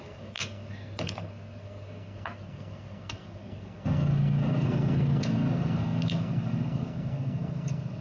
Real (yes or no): no